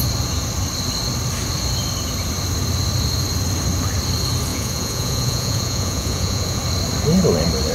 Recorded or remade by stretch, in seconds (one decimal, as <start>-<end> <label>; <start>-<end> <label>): 0.0-4.5 recorded; 4.5-6.6 remade; 6.6-7.7 recorded